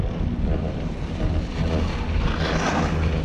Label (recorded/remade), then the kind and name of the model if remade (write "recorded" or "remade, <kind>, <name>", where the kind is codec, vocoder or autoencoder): recorded